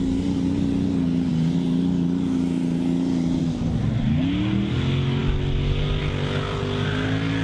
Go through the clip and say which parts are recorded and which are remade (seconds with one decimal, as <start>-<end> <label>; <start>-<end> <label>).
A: 0.0-7.4 recorded